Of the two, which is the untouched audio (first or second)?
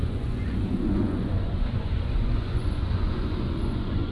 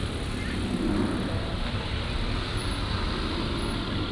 second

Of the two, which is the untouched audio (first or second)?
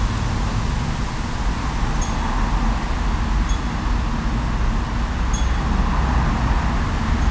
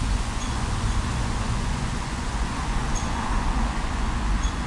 first